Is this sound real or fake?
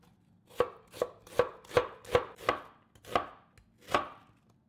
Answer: real